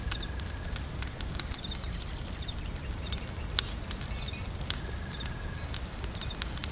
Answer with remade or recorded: recorded